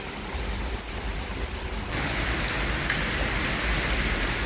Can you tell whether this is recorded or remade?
recorded